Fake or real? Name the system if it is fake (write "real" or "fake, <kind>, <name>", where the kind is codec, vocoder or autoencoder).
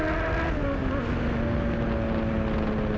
real